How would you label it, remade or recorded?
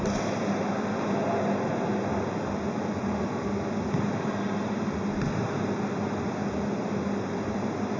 recorded